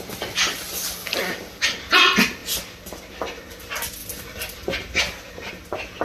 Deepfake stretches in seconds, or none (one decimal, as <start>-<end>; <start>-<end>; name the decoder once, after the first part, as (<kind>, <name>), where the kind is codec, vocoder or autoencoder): 1.2-1.9 (vocoder, BigVGAN v2); 4.0-5.0